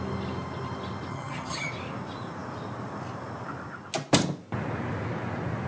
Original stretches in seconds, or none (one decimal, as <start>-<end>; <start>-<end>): 0.0-1.1; 1.7-5.7